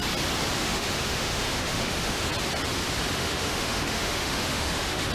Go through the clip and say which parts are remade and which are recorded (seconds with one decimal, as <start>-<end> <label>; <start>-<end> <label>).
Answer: 0.0-0.6 recorded; 0.6-2.3 remade; 2.3-3.2 recorded; 3.2-5.1 remade